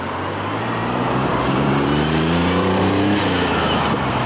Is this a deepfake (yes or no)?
yes